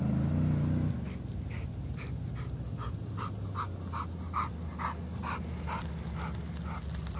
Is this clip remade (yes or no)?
no